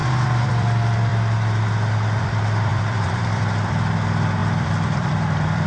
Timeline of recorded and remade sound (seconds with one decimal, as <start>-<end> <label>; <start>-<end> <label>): 0.0-1.1 remade; 1.1-2.2 recorded; 2.2-5.7 remade